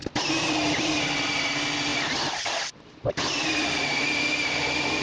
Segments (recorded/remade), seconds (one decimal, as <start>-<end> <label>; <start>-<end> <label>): 0.0-1.4 remade; 1.4-1.9 recorded; 1.9-5.0 remade